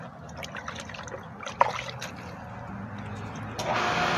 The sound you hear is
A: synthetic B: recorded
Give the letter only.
B